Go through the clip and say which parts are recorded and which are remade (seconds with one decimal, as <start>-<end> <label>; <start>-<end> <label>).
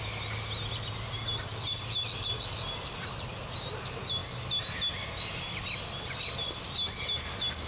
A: 0.0-7.7 recorded